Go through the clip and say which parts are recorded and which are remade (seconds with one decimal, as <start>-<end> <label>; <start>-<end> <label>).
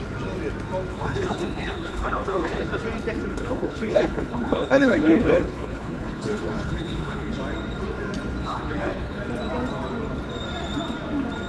0.0-0.9 recorded; 0.9-2.7 remade; 2.7-3.3 recorded; 3.3-7.3 remade; 7.3-8.4 recorded; 8.4-9.2 remade; 9.2-11.5 recorded